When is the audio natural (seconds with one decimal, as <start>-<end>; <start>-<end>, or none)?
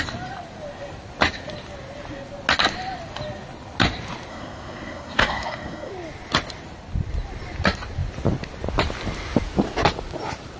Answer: 0.0-4.3; 5.9-10.6